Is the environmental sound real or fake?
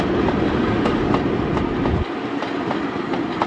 real